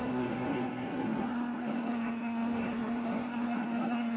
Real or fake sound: fake